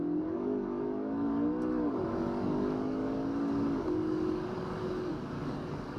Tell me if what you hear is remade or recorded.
remade